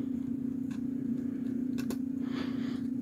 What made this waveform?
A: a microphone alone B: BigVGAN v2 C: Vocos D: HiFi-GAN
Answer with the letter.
B